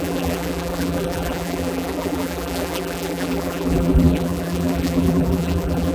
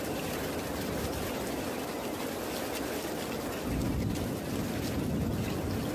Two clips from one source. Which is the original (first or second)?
second